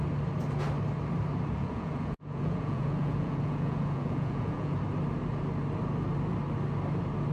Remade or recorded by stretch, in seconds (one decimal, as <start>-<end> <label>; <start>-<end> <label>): 0.0-1.6 recorded; 1.6-4.8 remade; 4.8-7.3 recorded

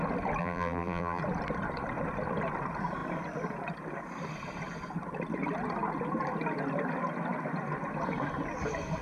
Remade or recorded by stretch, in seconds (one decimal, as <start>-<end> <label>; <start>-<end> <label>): 0.0-0.4 recorded; 0.4-1.2 remade; 1.2-9.0 recorded

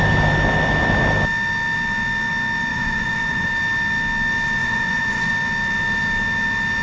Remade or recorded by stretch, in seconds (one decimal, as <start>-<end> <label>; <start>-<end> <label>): 0.0-2.7 recorded; 2.7-3.5 remade; 3.5-4.6 recorded; 4.6-5.3 remade; 5.3-6.8 recorded

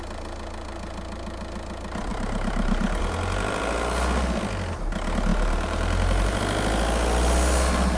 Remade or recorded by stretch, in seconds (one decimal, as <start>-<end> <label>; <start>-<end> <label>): 0.0-2.1 recorded; 2.1-3.0 remade; 3.0-5.3 recorded; 5.3-6.4 remade; 6.4-8.0 recorded

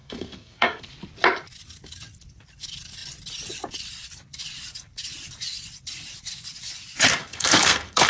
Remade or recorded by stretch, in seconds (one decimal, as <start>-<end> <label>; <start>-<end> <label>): 0.0-0.8 remade; 0.8-7.2 recorded; 7.2-8.1 remade

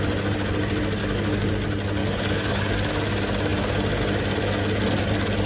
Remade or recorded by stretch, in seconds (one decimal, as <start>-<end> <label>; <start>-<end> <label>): 0.0-1.0 recorded; 1.0-1.5 remade; 1.5-2.0 recorded; 2.0-2.7 remade; 2.7-5.5 recorded